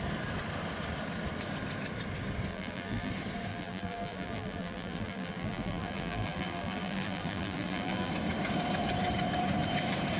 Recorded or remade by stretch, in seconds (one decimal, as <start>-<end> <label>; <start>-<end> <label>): 0.0-2.5 recorded; 2.5-3.1 remade; 3.1-3.5 recorded; 3.5-8.1 remade; 8.1-10.2 recorded